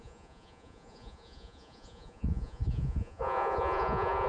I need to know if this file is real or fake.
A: fake